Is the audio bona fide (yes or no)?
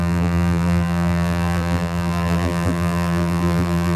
no